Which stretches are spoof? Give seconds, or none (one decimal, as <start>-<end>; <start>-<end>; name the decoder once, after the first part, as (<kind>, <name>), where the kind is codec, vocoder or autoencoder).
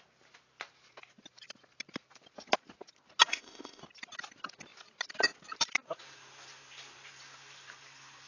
3.3-3.8 (codec, ZipCodec)